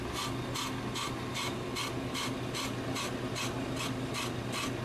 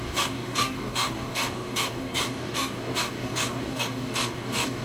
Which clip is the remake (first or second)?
second